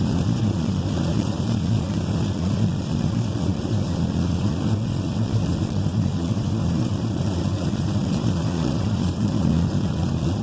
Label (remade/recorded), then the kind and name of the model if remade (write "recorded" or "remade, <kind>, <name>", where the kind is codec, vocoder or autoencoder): remade, vocoder, Vocos